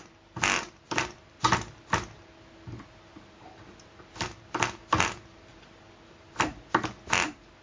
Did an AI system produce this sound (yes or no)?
no